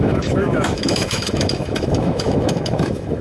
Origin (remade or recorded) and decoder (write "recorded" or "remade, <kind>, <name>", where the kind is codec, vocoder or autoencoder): remade, autoencoder, DAC-VAE